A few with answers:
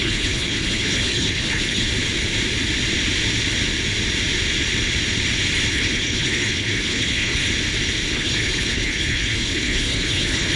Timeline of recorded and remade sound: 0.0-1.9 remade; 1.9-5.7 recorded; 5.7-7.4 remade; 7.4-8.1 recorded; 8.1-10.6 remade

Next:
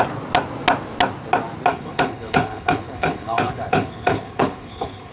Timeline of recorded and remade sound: 0.0-1.7 recorded; 1.7-5.1 remade

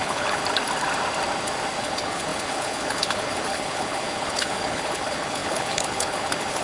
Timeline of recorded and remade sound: 0.0-0.4 remade; 0.4-1.8 recorded; 1.8-6.6 remade

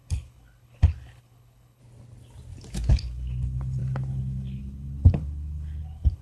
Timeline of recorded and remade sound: 0.0-1.8 remade; 1.8-2.9 recorded; 2.9-6.2 remade

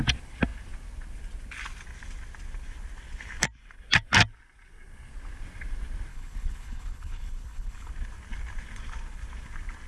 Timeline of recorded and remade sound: 0.0-6.1 recorded; 6.1-7.9 remade; 7.9-9.9 recorded

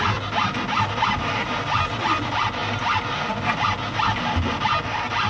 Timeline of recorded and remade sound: 0.0-5.3 recorded

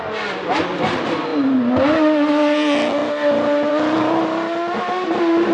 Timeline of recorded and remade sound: 0.0-5.5 recorded

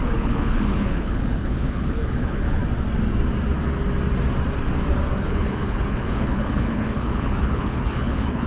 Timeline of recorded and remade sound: 0.0-2.6 remade; 2.6-5.2 recorded; 5.2-8.5 remade